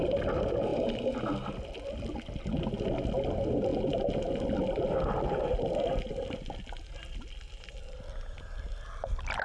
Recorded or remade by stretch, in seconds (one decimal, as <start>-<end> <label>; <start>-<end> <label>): 0.0-9.4 recorded